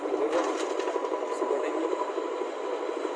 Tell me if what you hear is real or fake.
real